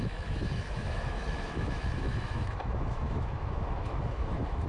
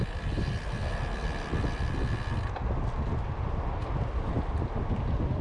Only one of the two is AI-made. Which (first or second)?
first